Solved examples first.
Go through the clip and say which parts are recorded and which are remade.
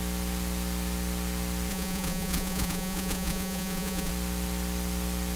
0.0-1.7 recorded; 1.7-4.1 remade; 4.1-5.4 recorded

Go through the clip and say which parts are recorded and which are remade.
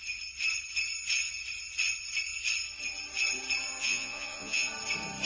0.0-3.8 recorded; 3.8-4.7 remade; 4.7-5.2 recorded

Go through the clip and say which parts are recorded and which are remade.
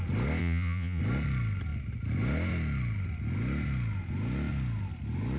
0.0-0.4 recorded; 0.4-1.0 remade; 1.0-5.4 recorded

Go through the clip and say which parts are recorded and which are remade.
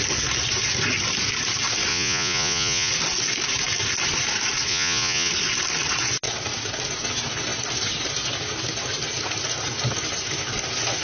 0.0-1.9 recorded; 1.9-2.9 remade; 2.9-4.7 recorded; 4.7-5.3 remade; 5.3-11.0 recorded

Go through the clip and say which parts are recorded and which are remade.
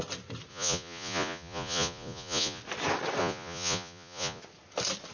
0.0-0.5 recorded; 0.5-2.6 remade; 2.6-3.2 recorded; 3.2-4.4 remade; 4.4-5.1 recorded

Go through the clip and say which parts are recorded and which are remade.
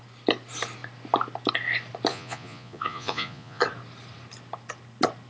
0.0-2.1 recorded; 2.1-3.6 remade; 3.6-5.3 recorded